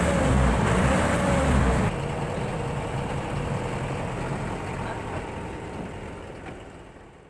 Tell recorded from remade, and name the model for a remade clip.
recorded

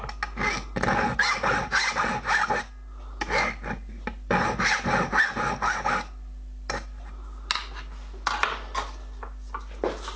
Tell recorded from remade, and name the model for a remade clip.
recorded